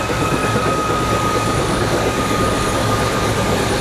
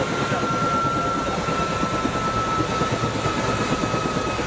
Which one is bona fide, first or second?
second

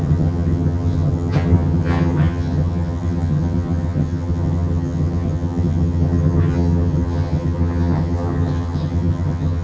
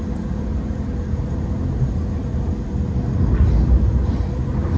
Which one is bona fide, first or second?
second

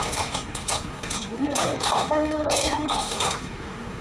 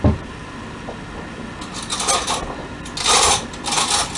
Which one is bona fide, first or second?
second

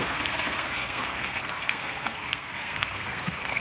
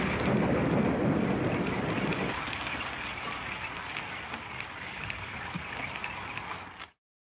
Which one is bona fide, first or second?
second